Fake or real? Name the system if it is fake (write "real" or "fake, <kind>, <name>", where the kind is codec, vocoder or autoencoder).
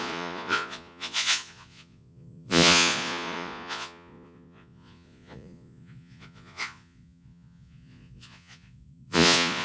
fake, vocoder, Vocos